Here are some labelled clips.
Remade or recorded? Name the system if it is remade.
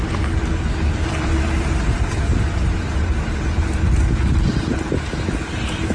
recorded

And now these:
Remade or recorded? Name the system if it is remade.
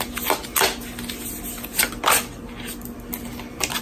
recorded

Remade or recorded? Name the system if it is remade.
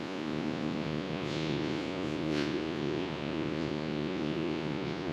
remade, vocoder, Vocos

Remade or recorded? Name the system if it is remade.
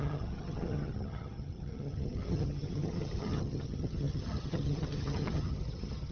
remade, vocoder, HiFi-GAN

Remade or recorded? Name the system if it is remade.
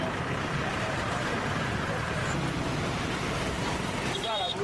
remade, vocoder, BigVGAN v2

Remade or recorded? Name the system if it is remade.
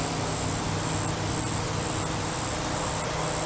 recorded